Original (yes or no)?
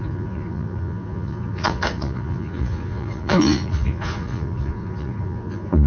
no